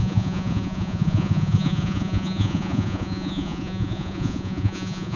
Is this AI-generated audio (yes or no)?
yes